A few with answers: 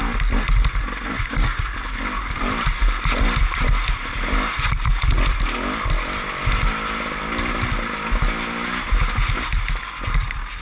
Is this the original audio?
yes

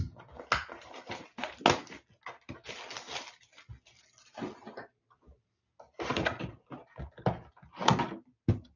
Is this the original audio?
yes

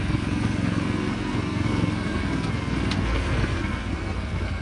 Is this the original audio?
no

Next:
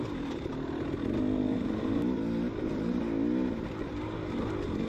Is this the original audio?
yes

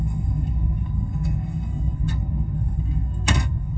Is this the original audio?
no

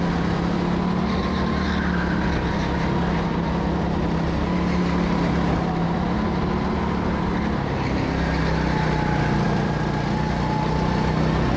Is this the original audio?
yes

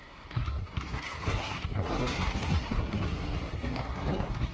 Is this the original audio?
no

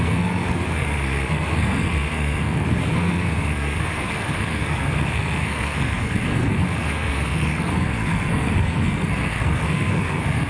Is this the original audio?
no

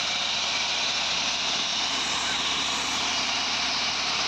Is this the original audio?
yes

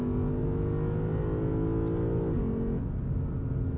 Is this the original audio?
yes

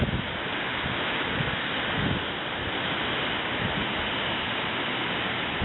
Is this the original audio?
yes